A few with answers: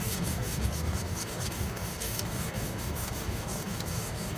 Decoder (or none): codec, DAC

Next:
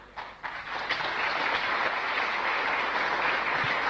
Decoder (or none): none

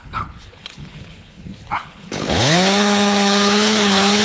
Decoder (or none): codec, HILCodec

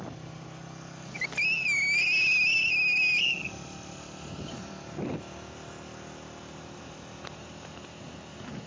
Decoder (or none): none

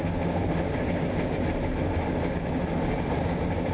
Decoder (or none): none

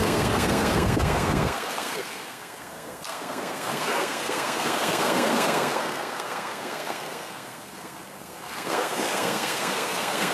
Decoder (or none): codec, SNAC